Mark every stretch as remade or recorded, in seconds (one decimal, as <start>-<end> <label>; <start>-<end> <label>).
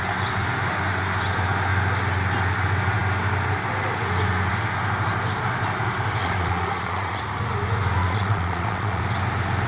0.0-6.2 recorded; 6.2-7.2 remade; 7.2-8.0 recorded; 8.0-9.0 remade; 9.0-9.7 recorded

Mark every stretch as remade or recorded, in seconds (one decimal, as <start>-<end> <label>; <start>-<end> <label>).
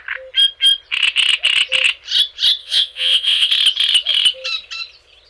0.0-2.6 recorded; 2.6-3.5 remade; 3.5-5.3 recorded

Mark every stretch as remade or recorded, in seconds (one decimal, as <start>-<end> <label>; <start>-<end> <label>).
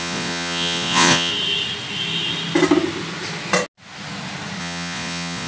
0.0-1.3 remade; 1.3-4.6 recorded; 4.6-5.5 remade